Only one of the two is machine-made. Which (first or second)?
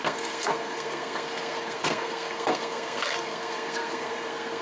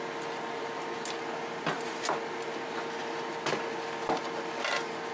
first